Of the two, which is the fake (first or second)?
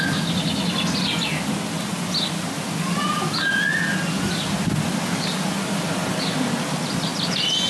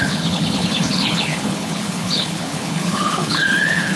second